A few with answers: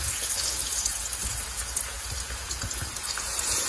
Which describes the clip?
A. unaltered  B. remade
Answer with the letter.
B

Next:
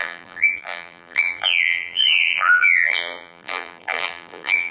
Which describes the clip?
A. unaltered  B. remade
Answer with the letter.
B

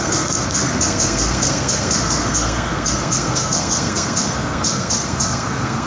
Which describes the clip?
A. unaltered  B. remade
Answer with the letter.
B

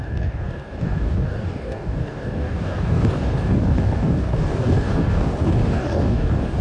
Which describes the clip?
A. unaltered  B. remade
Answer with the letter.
B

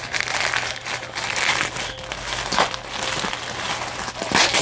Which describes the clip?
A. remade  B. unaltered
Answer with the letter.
B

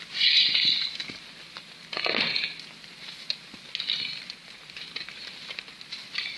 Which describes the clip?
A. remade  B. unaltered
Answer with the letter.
B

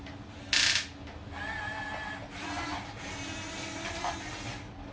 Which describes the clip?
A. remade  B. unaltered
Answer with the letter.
B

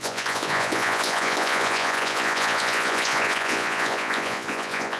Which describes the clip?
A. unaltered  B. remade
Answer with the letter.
B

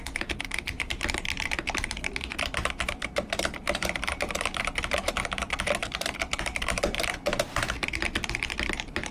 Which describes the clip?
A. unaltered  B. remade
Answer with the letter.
B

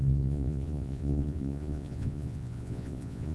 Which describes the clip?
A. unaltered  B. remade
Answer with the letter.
B